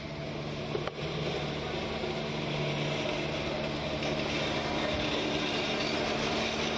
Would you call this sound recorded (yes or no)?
yes